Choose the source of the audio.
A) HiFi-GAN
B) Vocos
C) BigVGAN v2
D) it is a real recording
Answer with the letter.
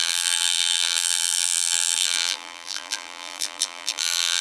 C